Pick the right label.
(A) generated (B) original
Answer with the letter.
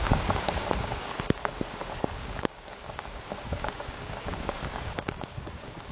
A